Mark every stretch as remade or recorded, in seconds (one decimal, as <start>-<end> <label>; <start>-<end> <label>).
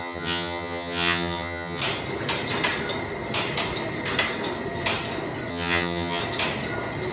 0.0-1.8 remade; 1.8-5.5 recorded; 5.5-6.2 remade; 6.2-7.1 recorded